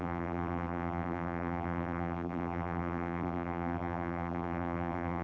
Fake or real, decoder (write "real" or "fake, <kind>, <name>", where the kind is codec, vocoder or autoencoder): fake, vocoder, BigVGAN v2